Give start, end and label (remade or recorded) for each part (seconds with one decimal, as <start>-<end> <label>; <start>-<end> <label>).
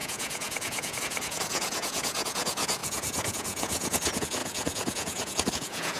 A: 0.0-6.0 remade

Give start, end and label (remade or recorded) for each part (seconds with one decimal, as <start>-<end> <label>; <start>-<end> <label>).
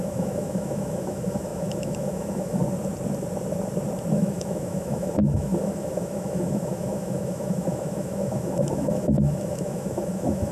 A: 0.0-2.6 remade; 2.6-4.1 recorded; 4.1-10.5 remade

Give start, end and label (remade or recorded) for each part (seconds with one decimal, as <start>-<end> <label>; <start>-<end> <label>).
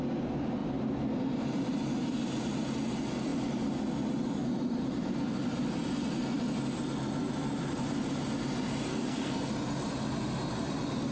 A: 0.0-8.9 recorded; 8.9-9.5 remade; 9.5-11.1 recorded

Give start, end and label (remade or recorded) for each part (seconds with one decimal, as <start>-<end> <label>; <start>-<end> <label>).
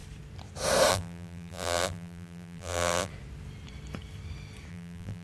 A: 0.0-0.9 recorded; 0.9-3.1 remade; 3.1-4.7 recorded; 4.7-5.2 remade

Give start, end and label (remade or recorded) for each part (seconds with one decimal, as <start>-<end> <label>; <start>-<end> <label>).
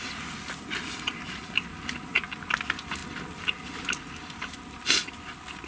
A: 0.0-5.7 recorded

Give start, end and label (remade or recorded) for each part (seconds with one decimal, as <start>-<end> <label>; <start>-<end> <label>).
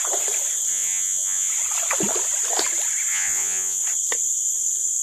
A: 0.0-0.7 recorded; 0.7-1.5 remade; 1.5-3.1 recorded; 3.1-3.8 remade; 3.8-5.0 recorded